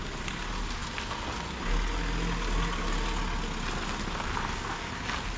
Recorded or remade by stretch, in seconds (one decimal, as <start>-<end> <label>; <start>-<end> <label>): 0.0-5.4 recorded

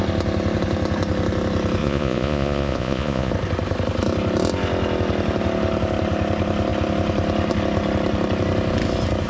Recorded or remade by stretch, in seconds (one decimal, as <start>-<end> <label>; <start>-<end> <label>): 0.0-1.8 recorded; 1.8-3.3 remade; 3.3-9.3 recorded